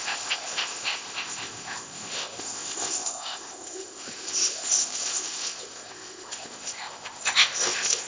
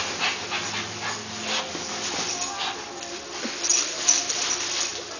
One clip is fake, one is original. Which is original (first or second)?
second